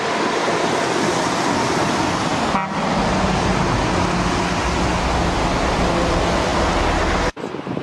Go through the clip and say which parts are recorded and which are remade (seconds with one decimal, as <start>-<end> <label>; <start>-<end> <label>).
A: 0.0-7.8 recorded